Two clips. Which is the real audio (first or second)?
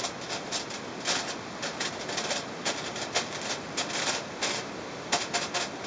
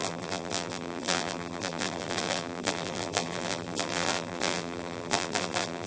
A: first